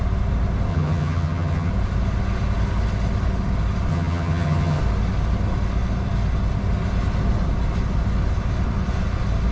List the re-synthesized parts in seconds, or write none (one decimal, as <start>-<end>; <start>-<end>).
0.7-1.7; 3.9-4.8